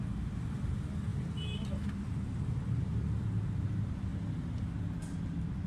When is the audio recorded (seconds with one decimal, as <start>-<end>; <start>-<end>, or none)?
0.0-5.7